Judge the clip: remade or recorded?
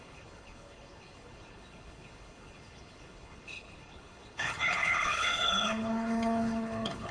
remade